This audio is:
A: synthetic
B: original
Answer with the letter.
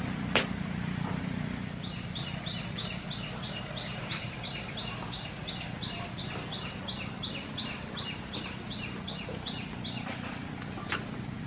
B